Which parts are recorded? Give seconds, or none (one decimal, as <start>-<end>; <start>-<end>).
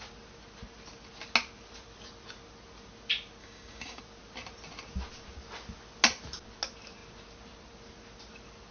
0.0-3.4; 4.0-8.7